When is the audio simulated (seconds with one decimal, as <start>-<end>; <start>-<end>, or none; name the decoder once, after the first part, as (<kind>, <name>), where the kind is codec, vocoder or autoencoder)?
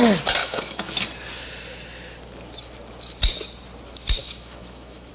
0.4-0.9 (autoencoder, DAC-VAE); 4.2-5.1